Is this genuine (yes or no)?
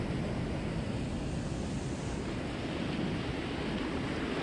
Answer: yes